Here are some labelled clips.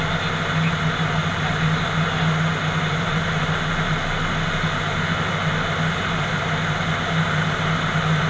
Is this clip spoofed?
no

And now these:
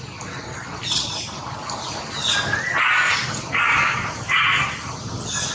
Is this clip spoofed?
no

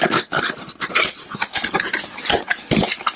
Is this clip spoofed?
no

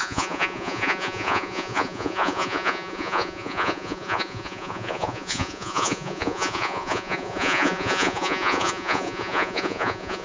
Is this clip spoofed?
yes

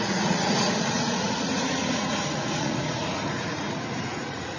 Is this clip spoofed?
yes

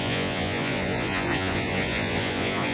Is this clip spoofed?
yes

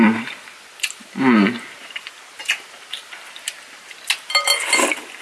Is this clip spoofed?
no